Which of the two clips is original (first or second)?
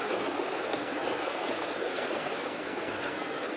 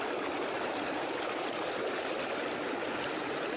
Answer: second